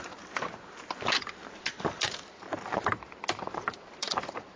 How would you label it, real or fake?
fake